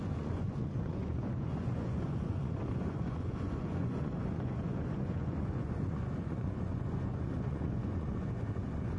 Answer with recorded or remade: remade